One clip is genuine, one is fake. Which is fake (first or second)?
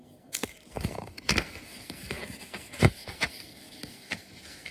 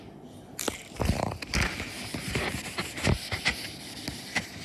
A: first